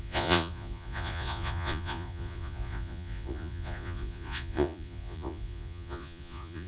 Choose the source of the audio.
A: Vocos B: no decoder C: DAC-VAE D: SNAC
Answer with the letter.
A